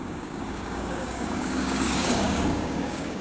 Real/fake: fake